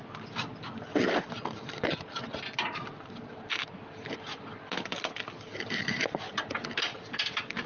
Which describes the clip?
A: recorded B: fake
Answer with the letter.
A